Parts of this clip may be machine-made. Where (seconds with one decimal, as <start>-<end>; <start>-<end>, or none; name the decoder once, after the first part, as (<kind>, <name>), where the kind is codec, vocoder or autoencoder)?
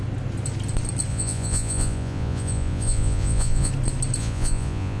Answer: 1.1-3.7 (vocoder, Vocos); 4.2-5.0